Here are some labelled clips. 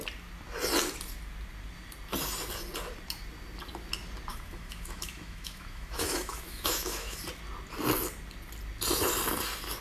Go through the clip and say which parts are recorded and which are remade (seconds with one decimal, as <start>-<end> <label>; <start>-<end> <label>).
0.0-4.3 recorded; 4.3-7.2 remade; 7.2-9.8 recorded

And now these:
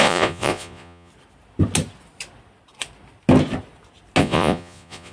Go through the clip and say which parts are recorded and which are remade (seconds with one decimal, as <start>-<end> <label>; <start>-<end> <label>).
0.0-1.1 remade; 1.1-4.2 recorded; 4.2-5.1 remade

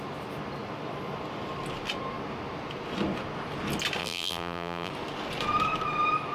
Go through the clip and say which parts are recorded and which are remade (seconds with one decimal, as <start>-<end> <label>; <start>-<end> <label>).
0.0-4.0 recorded; 4.0-4.9 remade; 4.9-6.3 recorded

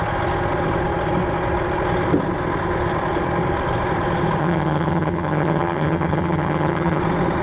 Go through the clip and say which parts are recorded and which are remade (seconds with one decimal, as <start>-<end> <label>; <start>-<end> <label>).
0.0-4.4 recorded; 4.4-7.0 remade; 7.0-7.4 recorded

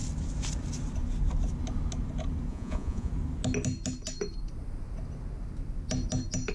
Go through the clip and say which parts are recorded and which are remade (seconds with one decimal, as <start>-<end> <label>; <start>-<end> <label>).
0.0-2.5 recorded; 2.5-3.1 remade; 3.1-6.5 recorded

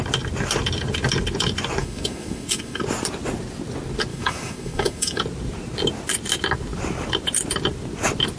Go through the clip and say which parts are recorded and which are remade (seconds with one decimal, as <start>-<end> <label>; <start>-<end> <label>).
0.0-1.8 recorded; 1.8-2.8 remade; 2.8-4.1 recorded; 4.1-5.2 remade; 5.2-8.4 recorded

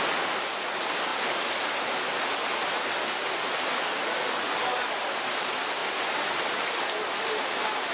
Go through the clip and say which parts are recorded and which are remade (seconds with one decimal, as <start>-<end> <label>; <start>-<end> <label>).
0.0-7.9 recorded

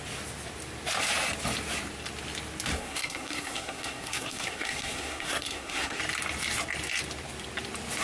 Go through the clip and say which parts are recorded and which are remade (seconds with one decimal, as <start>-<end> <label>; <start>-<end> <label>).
0.0-2.7 recorded; 2.7-6.0 remade; 6.0-8.0 recorded